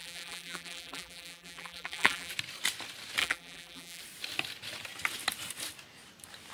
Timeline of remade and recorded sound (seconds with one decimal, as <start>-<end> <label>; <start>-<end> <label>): 0.0-2.3 remade; 2.3-3.2 recorded; 3.2-4.0 remade; 4.0-6.5 recorded